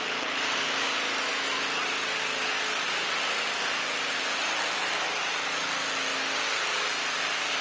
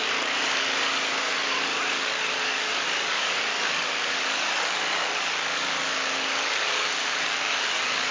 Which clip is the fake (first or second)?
second